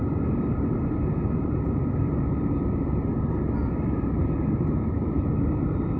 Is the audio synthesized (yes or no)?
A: yes